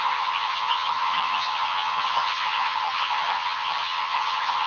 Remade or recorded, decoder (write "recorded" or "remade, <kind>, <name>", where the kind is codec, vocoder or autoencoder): remade, vocoder, HiFi-GAN